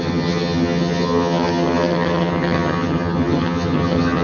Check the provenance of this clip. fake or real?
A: fake